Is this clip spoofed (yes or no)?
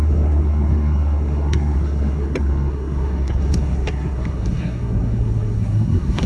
yes